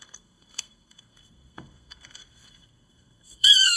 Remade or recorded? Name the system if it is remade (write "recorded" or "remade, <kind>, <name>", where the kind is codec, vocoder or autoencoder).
remade, codec, SNAC